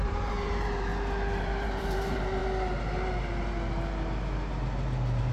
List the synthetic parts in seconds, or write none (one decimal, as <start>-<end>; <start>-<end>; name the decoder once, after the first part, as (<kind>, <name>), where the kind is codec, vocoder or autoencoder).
0.0-0.9 (vocoder, BigVGAN v2); 1.4-2.4